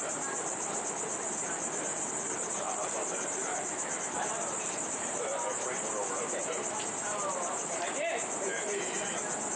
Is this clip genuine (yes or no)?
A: no